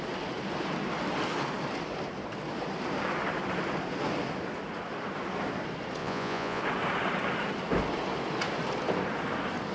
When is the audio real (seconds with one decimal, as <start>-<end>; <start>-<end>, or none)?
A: 0.0-6.0; 6.6-9.7